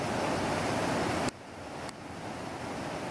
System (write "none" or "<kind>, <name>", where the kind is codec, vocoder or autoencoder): none